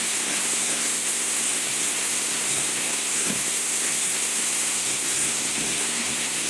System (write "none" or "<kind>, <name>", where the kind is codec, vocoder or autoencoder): codec, SNAC